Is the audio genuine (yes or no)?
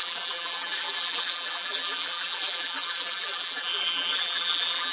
no